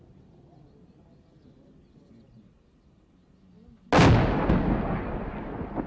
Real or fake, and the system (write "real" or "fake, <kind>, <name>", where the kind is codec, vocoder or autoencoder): real